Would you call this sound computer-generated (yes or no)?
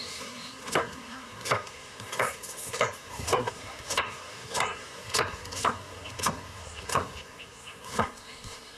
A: yes